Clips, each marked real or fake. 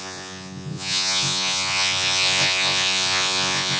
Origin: fake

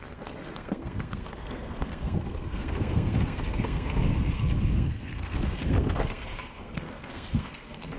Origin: fake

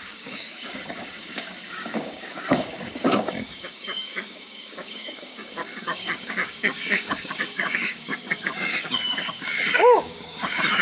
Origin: fake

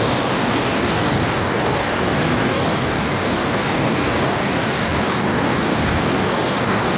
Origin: fake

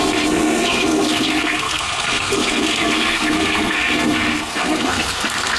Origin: fake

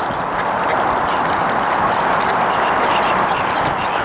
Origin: fake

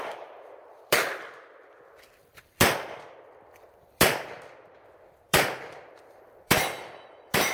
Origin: fake